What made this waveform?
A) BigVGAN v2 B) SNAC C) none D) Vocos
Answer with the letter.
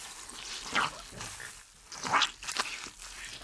C